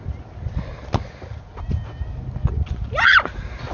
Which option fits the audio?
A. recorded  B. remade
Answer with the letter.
A